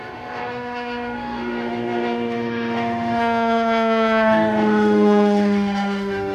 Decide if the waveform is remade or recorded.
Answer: remade